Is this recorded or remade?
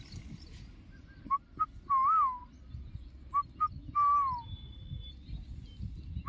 recorded